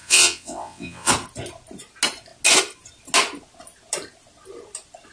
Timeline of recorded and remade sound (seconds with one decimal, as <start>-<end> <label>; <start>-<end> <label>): 0.0-1.1 remade; 1.1-5.1 recorded